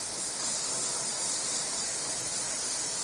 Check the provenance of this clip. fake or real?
real